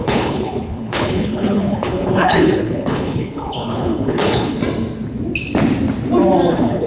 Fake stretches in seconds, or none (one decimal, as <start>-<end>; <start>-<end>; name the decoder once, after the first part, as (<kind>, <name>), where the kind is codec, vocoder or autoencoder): 0.0-4.6 (codec, HILCodec); 6.5-6.9